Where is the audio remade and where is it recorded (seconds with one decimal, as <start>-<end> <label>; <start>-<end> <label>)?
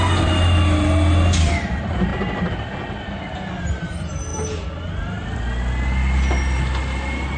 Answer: 0.0-7.4 recorded